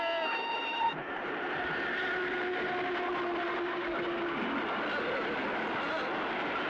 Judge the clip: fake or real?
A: real